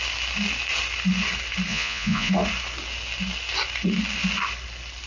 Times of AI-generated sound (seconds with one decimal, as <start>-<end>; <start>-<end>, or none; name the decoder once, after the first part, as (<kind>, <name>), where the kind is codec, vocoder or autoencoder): 1.7-2.3 (vocoder, Vocos)

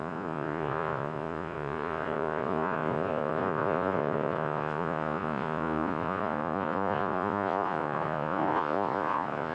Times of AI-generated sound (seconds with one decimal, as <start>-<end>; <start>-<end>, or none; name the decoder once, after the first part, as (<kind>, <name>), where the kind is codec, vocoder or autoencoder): 0.0-9.5 (vocoder, Vocos)

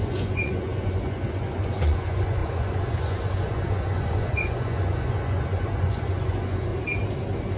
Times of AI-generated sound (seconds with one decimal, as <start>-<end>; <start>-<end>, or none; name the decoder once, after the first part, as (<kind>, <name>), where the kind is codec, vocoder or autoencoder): 0.0-6.7 (vocoder, Vocos)